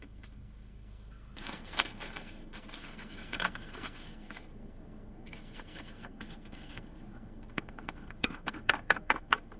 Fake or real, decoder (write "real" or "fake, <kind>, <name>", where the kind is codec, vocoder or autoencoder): fake, codec, SNAC